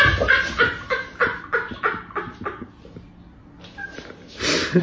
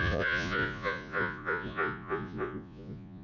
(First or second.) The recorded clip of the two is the first